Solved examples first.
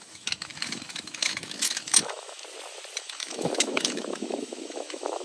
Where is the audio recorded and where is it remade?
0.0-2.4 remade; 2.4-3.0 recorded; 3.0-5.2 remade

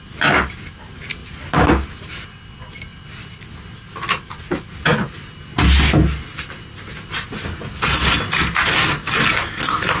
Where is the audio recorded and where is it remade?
0.0-10.0 recorded

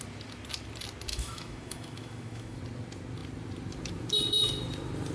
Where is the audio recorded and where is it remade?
0.0-1.1 recorded; 1.1-2.6 remade; 2.6-5.1 recorded